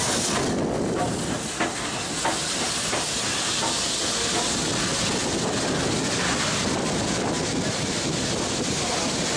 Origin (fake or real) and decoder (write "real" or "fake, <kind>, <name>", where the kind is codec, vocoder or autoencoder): real